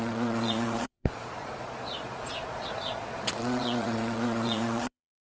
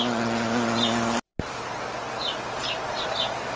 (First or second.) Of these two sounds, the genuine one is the second